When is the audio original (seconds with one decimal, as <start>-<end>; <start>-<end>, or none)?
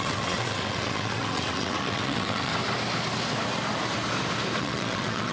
2.5-4.6